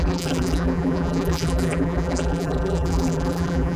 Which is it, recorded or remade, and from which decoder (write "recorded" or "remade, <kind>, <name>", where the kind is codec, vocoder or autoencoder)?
remade, vocoder, BigVGAN v2